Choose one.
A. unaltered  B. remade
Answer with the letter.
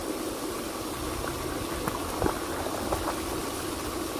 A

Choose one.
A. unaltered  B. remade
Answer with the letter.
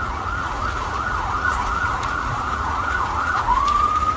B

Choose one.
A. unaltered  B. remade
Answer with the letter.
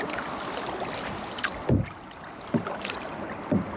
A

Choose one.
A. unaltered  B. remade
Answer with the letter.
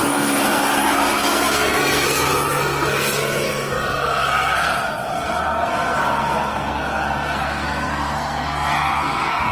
B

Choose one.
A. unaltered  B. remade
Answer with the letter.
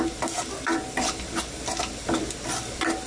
A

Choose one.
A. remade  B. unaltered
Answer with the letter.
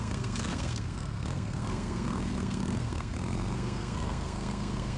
A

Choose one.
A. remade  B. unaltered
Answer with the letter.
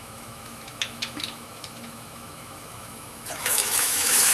A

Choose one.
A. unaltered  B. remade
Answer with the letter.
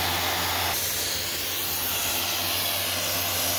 A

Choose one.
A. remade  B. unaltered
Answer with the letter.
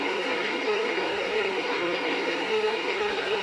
A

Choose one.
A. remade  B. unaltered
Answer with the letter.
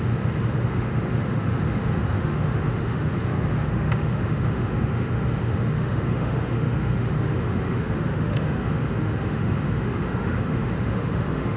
A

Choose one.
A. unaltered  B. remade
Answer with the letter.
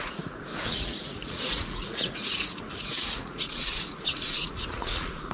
B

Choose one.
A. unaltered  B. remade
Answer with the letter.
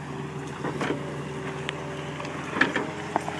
A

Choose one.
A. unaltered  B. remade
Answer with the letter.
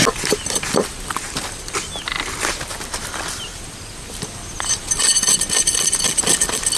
A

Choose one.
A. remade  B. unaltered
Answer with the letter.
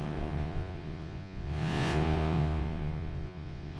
A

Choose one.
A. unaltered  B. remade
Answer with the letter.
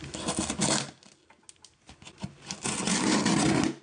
A